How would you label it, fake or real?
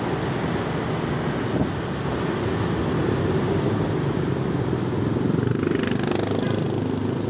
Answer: real